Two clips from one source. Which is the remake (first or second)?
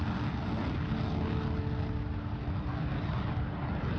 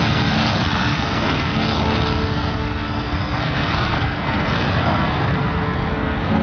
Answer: second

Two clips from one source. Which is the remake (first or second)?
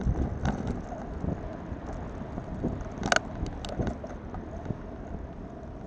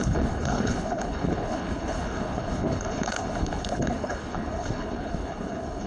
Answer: second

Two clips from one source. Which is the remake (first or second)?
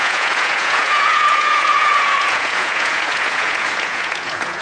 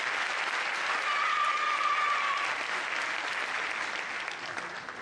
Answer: first